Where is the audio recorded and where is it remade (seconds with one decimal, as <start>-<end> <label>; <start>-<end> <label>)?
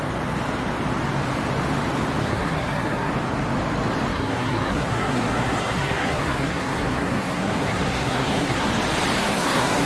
0.0-2.2 recorded; 2.2-3.1 remade; 3.1-4.1 recorded; 4.1-8.7 remade; 8.7-9.2 recorded; 9.2-9.9 remade